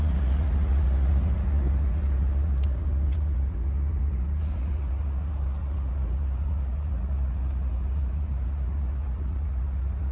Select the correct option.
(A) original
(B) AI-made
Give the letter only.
B